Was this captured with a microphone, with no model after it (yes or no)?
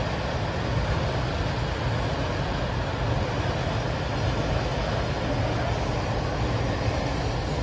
yes